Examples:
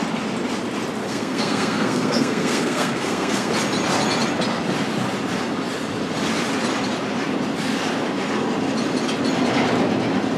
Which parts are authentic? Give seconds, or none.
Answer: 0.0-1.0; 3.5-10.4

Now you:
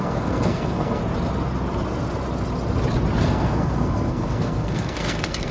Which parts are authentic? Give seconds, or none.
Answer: 1.0-3.2

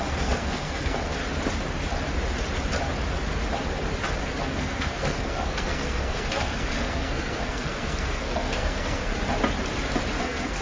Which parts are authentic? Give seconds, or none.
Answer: 1.2-4.4; 9.1-10.2

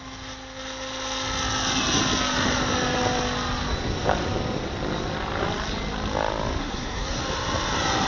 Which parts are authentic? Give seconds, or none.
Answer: 0.0-6.6; 7.2-8.1

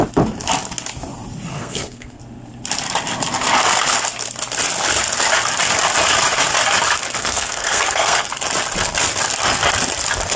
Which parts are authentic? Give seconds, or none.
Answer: 0.0-1.5; 2.2-7.2; 8.3-10.4

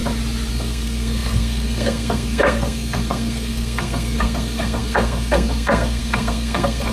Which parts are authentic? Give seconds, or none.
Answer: 0.0-0.5

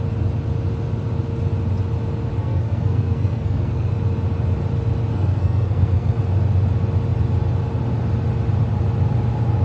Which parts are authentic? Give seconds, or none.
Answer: 0.0-2.4; 3.9-5.1; 6.2-9.6

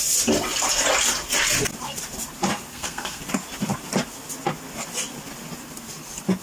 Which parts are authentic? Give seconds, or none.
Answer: 0.0-2.7; 3.2-6.4